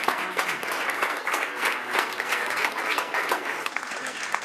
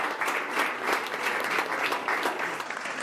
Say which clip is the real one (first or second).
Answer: second